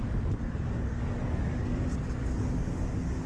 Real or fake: fake